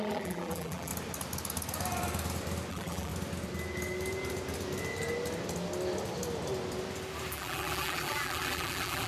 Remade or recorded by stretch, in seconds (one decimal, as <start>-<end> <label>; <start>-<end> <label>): 0.0-0.9 remade; 0.9-2.7 recorded; 2.7-3.1 remade; 3.1-7.3 recorded; 7.3-9.1 remade